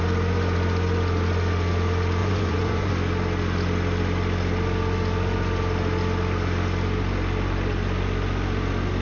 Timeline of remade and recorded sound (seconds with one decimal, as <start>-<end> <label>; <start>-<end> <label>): 0.0-2.2 recorded; 2.2-2.9 remade; 2.9-9.0 recorded